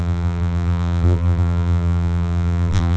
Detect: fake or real fake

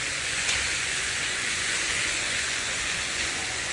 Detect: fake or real fake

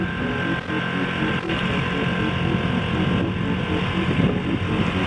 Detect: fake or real real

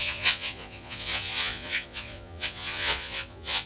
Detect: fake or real fake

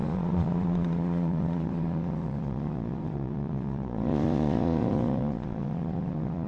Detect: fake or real fake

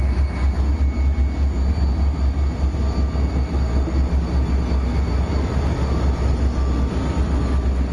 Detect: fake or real real